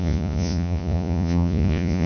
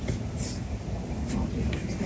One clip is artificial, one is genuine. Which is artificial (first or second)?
first